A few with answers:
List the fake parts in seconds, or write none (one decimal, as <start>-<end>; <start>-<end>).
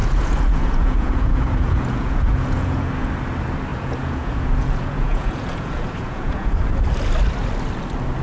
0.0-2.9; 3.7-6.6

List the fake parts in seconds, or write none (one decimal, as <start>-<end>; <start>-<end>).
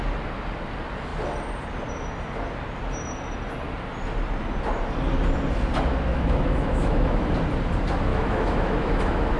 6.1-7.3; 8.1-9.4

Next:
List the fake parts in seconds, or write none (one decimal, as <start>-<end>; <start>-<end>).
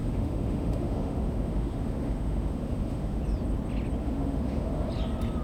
0.0-3.2; 4.0-4.9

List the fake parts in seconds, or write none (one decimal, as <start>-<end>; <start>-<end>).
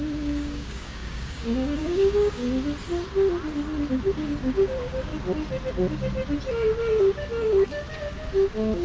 0.0-2.4; 3.9-5.1; 6.5-8.8